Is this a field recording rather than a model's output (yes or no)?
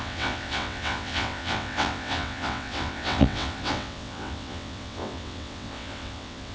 no